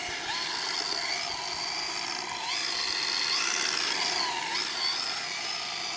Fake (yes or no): no